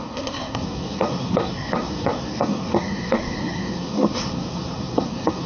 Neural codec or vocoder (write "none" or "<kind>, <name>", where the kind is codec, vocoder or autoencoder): codec, SNAC